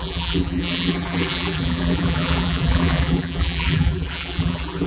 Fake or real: fake